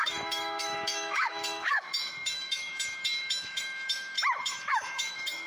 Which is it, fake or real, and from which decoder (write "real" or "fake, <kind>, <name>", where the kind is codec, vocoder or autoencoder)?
fake, autoencoder, DAC-VAE